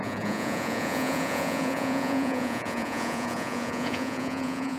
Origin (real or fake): fake